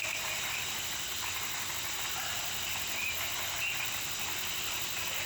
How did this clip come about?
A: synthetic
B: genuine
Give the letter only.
B